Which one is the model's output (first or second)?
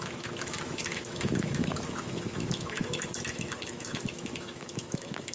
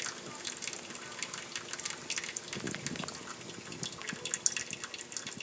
first